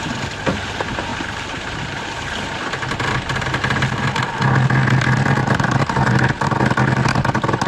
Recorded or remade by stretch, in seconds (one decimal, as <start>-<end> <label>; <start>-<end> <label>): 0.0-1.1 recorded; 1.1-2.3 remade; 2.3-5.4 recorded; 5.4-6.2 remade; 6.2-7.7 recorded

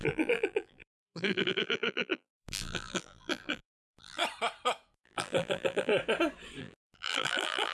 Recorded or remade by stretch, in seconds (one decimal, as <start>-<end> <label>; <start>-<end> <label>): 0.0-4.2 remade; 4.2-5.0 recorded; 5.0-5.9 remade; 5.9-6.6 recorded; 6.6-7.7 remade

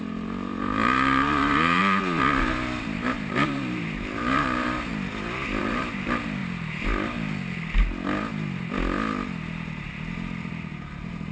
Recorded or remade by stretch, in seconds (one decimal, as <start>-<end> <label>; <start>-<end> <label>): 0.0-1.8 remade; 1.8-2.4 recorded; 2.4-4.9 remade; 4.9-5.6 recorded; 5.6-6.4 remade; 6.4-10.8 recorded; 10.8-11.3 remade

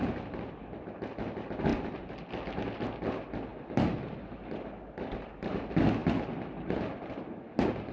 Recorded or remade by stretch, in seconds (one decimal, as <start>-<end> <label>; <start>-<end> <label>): 0.0-0.6 remade; 0.6-1.7 recorded; 1.7-2.3 remade; 2.3-6.0 recorded; 6.0-7.1 remade; 7.1-7.9 recorded

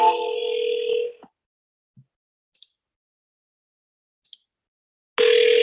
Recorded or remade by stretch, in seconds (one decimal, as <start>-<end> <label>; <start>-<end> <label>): 0.0-5.6 recorded

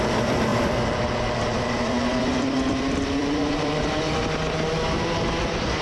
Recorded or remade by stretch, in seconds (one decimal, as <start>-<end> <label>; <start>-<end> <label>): 0.0-0.5 recorded; 0.5-4.0 remade; 4.0-5.8 recorded